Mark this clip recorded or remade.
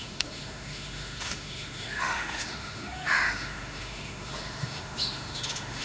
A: remade